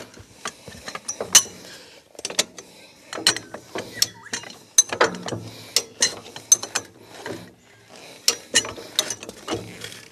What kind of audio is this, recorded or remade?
recorded